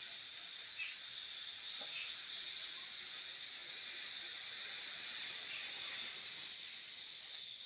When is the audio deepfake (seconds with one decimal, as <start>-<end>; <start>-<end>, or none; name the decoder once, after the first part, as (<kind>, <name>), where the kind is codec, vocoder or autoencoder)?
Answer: none